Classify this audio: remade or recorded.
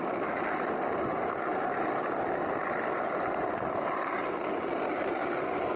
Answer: recorded